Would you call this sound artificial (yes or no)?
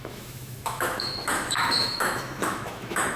yes